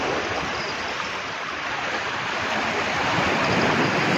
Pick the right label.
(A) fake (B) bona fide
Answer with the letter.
A